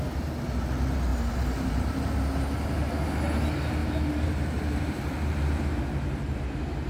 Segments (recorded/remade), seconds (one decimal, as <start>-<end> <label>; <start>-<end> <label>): 0.0-1.1 recorded; 1.1-2.1 remade; 2.1-3.8 recorded; 3.8-6.4 remade; 6.4-6.9 recorded